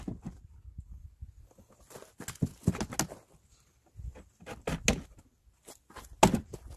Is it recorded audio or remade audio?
recorded